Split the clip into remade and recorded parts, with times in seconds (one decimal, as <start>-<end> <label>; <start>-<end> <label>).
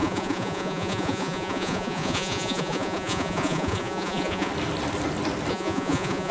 0.0-4.5 remade; 4.5-5.5 recorded; 5.5-6.3 remade